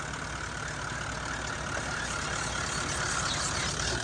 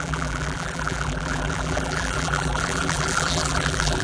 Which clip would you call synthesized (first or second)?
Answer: second